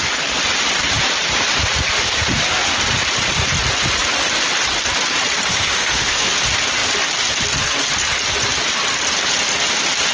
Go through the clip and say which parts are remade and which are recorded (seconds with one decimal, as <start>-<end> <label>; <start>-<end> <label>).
0.0-5.5 recorded; 5.5-6.3 remade; 6.3-10.1 recorded